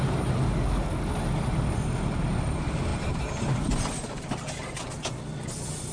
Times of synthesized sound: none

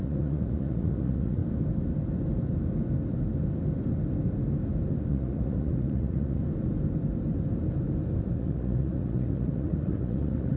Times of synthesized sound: 0.0-1.4 (vocoder, Vocos); 5.1-6.4; 8.2-10.6

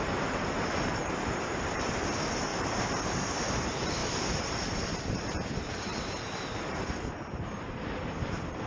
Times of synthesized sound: 0.0-8.7 (vocoder, BigVGAN v2)

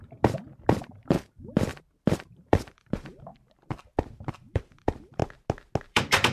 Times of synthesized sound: 0.8-3.3 (vocoder, BigVGAN v2); 4.3-5.2; 5.8-6.3

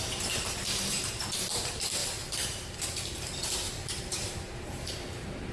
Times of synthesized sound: 0.0-5.5 (vocoder, BigVGAN v2)

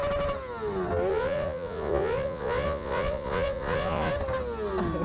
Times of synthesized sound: 1.1-4.1 (vocoder, Vocos)